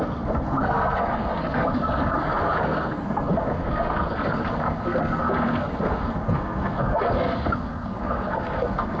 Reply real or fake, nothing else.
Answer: fake